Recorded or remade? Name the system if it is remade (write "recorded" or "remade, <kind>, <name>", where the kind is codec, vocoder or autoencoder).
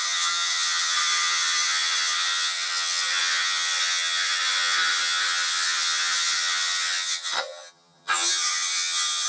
remade, vocoder, HiFi-GAN